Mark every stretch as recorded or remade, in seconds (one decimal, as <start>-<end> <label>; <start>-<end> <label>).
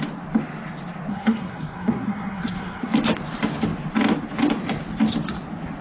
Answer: 0.0-1.1 recorded; 1.1-2.9 remade; 2.9-5.8 recorded